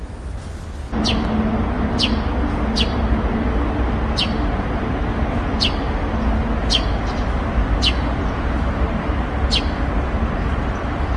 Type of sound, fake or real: real